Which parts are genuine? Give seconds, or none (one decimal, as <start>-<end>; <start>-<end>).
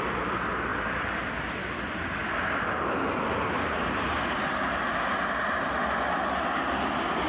0.0-0.7; 1.5-2.2; 3.5-7.3